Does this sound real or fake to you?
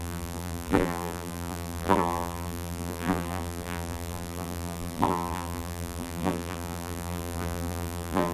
fake